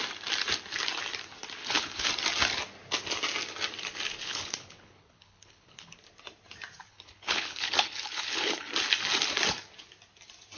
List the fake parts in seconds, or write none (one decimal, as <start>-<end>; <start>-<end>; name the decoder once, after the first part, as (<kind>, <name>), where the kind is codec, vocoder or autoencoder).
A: 1.6-2.1 (codec, HILCodec); 4.2-6.0; 6.9-8.7